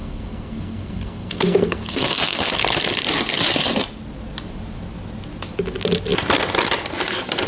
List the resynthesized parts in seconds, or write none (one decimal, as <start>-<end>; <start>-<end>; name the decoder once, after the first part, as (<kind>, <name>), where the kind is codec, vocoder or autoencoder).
0.0-2.5 (codec, SNAC)